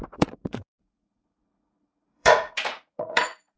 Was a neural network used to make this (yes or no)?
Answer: yes